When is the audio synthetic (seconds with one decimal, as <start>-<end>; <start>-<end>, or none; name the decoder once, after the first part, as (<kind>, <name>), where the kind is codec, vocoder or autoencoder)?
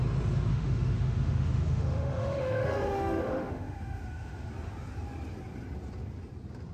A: 0.5-4.5 (autoencoder, DAC-VAE)